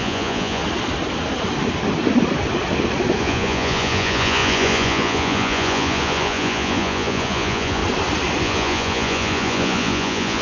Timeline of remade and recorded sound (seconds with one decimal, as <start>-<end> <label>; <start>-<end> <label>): 0.0-0.6 remade; 0.6-3.2 recorded; 3.2-7.8 remade; 7.8-8.4 recorded; 8.4-10.4 remade